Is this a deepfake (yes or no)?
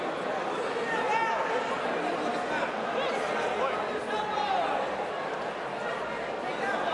no